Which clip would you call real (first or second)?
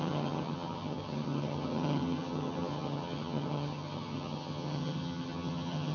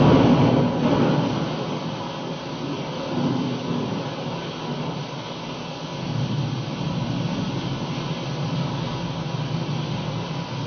second